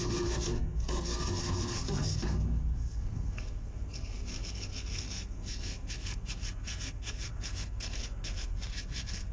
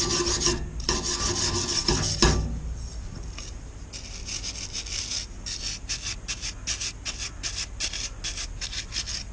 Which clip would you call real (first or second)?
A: second